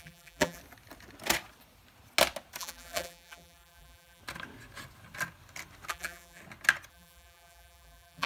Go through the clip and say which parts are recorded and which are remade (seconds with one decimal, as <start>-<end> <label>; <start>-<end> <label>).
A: 0.0-0.6 remade; 0.6-2.6 recorded; 2.6-4.2 remade; 4.2-5.9 recorded; 5.9-6.4 remade; 6.4-6.9 recorded; 6.9-8.3 remade